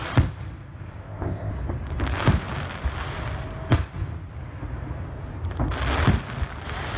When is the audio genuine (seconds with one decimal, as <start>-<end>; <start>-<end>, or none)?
0.0-0.9; 1.5-7.0